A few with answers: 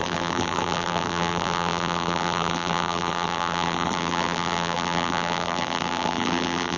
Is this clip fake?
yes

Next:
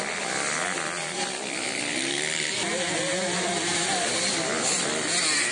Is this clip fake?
yes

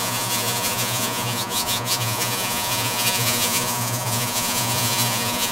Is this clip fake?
yes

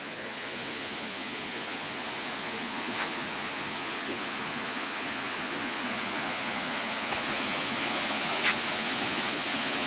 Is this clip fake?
yes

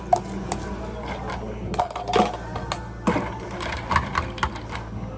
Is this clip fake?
no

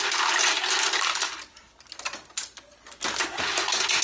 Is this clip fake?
no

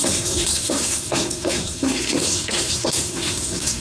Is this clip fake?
yes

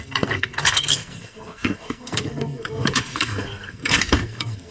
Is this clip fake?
yes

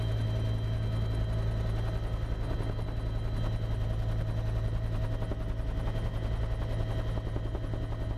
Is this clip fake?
no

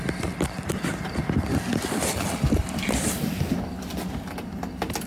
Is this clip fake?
no